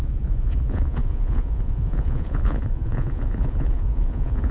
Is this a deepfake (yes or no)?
yes